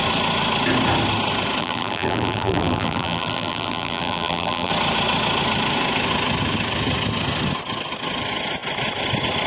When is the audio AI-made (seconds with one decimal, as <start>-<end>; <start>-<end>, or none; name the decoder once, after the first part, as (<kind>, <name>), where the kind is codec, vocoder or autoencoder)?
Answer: 1.6-4.7 (vocoder, BigVGAN v2)